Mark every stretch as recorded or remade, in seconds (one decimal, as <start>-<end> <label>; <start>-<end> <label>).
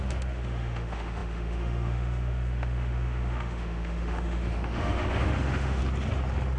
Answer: 0.0-5.8 remade; 5.8-6.6 recorded